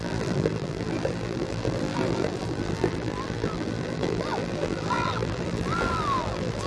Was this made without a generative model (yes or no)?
no